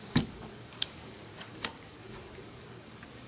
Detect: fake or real fake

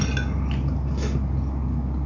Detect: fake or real real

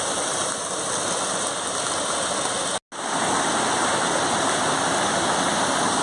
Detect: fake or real real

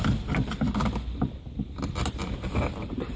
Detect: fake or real real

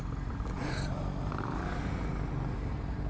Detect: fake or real real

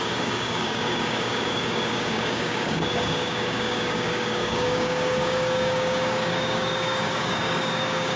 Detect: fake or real fake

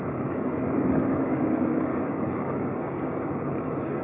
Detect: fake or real fake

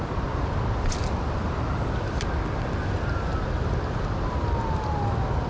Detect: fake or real real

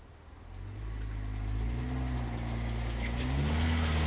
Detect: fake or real real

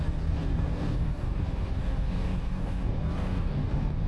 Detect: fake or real fake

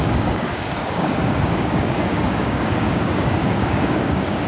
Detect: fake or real fake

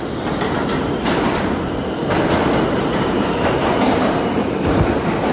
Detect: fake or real real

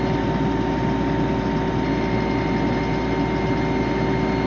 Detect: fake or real real